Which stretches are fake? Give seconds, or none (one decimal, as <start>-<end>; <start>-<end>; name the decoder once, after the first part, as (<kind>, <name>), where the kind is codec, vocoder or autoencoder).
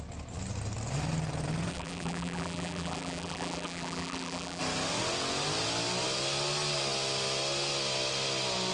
1.7-4.6 (vocoder, BigVGAN v2)